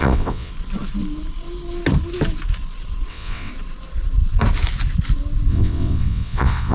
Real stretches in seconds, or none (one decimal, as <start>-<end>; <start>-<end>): 0.5-3.1; 3.5-5.5